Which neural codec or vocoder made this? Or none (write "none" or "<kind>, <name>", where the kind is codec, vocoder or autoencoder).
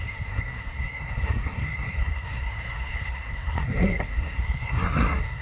codec, SNAC